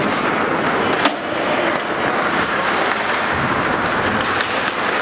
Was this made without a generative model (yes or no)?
yes